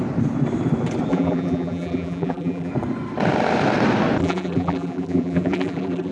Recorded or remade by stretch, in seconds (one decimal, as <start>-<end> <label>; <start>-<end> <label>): 0.0-1.1 recorded; 1.1-2.7 remade; 2.7-4.2 recorded; 4.2-6.1 remade